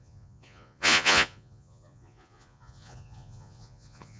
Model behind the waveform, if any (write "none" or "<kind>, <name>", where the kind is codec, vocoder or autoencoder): vocoder, Vocos